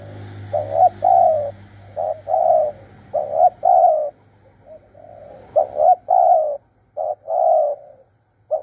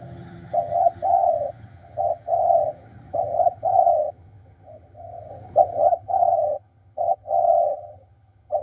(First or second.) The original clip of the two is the first